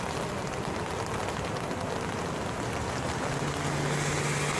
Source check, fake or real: real